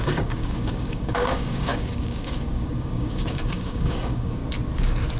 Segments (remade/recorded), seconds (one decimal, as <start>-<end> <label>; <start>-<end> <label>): 0.0-4.4 remade; 4.4-5.2 recorded